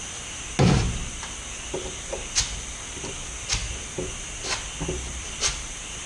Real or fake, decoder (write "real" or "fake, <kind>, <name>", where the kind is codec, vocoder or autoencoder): real